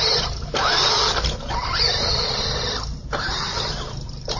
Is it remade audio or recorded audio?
recorded